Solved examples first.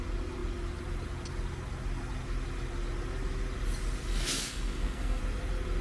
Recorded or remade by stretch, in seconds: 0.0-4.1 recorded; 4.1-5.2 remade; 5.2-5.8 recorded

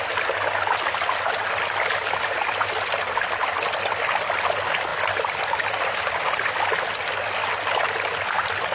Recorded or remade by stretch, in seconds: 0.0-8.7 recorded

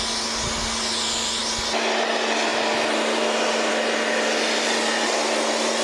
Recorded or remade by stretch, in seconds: 0.0-5.8 recorded

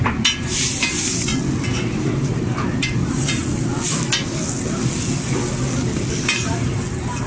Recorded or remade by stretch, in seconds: 0.0-1.3 remade; 1.3-2.0 recorded; 2.0-3.4 remade; 3.4-6.5 recorded; 6.5-7.3 remade